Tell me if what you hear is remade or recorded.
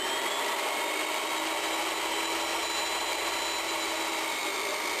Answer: recorded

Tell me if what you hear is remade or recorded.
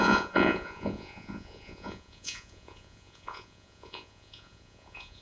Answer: remade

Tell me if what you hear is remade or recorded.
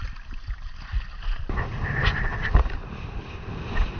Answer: recorded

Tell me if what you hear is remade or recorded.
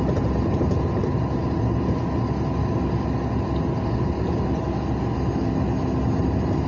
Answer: recorded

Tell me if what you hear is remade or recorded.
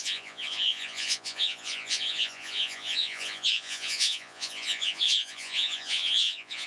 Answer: remade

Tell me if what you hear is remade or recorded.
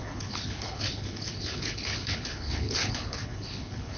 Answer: remade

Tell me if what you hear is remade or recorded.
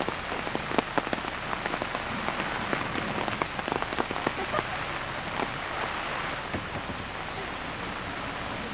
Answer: recorded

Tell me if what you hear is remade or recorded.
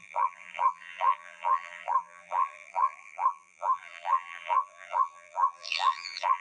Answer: remade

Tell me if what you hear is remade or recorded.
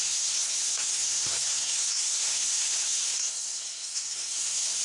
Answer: remade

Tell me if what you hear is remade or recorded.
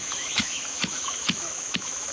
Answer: remade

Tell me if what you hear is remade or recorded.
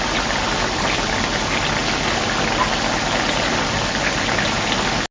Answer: recorded